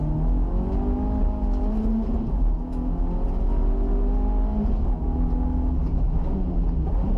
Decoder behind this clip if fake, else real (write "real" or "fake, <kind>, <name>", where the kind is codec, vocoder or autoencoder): real